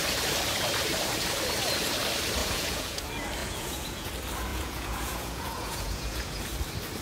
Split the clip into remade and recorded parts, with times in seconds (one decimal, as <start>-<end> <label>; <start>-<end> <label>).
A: 0.0-2.4 recorded; 2.4-3.0 remade; 3.0-3.4 recorded; 3.4-4.1 remade; 4.1-4.5 recorded; 4.5-6.4 remade; 6.4-7.0 recorded